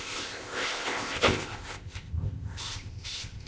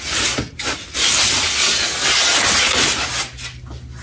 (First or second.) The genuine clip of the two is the second